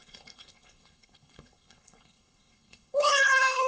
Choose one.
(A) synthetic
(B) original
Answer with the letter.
A